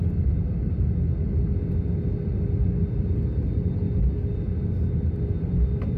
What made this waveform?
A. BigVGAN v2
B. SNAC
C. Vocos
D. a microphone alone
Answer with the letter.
D